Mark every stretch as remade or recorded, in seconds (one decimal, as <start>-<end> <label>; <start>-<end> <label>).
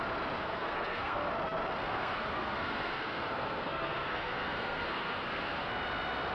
0.0-0.4 recorded; 0.4-1.3 remade; 1.3-1.9 recorded; 1.9-5.7 remade; 5.7-6.3 recorded